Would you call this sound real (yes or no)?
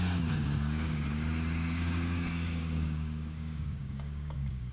no